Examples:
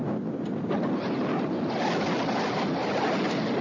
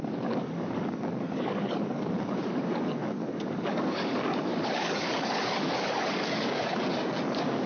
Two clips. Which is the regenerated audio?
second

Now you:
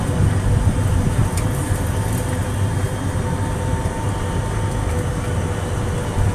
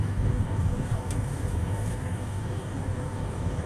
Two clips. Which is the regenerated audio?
second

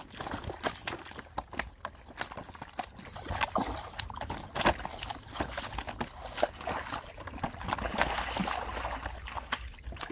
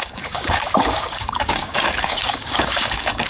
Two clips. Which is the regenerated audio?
second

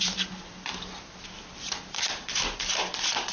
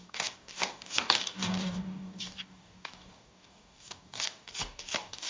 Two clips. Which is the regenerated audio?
second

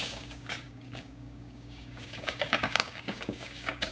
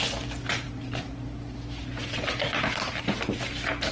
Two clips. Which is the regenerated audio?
first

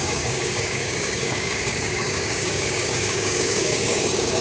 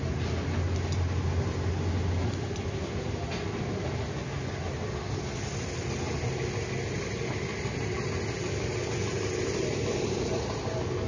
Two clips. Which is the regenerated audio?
first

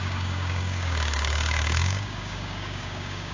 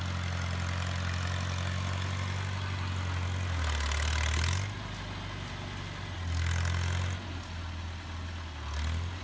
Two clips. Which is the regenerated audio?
first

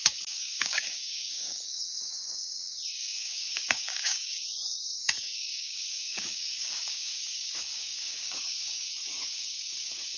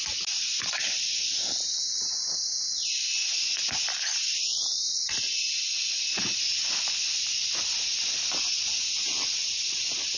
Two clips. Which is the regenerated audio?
first